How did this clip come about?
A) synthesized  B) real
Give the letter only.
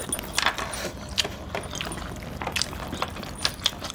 B